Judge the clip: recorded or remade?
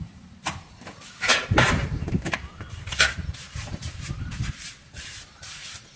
remade